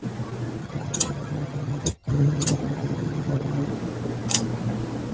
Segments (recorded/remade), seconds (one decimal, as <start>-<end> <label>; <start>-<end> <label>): 0.0-0.6 recorded; 0.6-3.7 remade; 3.7-5.1 recorded